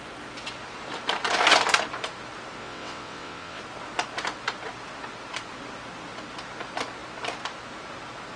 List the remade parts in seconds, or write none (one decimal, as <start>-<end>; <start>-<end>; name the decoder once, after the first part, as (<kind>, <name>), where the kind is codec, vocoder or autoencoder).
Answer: 2.6-3.6 (vocoder, WaveNeXt)